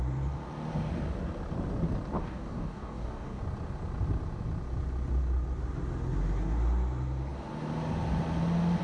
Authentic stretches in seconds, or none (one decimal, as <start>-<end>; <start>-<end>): 0.0-2.2; 3.4-8.8